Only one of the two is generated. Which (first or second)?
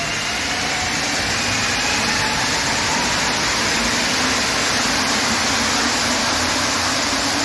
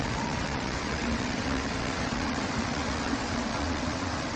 second